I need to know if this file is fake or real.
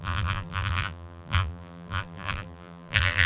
fake